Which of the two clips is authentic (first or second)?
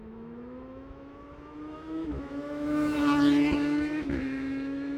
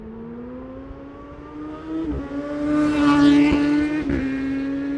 second